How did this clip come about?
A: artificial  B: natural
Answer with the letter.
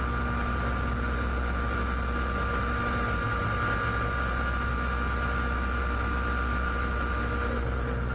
B